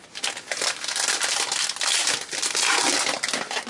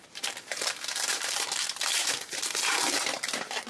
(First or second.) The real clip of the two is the first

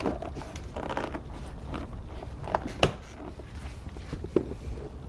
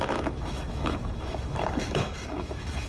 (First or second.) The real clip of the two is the first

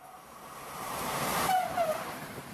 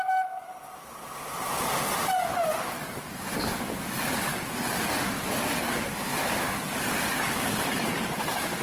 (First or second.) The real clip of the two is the second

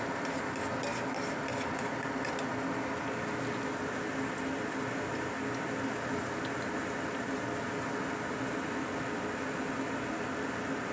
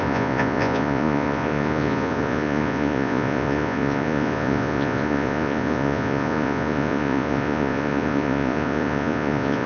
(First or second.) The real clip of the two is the first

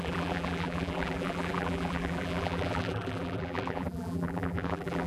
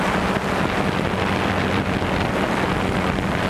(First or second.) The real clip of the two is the second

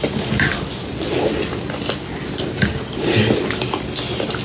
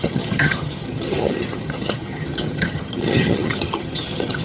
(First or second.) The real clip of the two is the first